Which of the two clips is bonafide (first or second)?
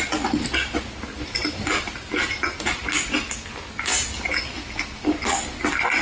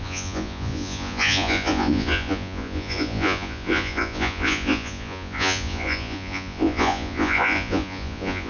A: first